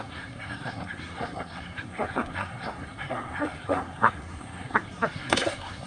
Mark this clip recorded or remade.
remade